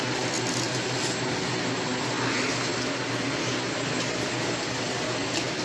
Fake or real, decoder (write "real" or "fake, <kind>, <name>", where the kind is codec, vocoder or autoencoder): real